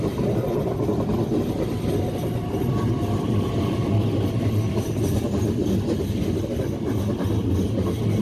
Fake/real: real